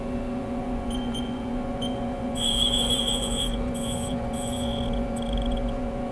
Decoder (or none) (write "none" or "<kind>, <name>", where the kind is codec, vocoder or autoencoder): vocoder, Vocos